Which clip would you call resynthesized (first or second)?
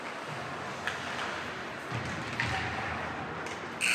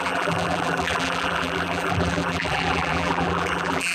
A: second